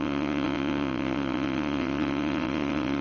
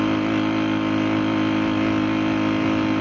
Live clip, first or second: second